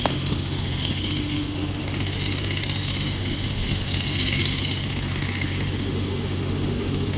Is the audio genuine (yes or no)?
no